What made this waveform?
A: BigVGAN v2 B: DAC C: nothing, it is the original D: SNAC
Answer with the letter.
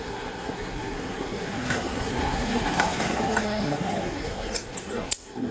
D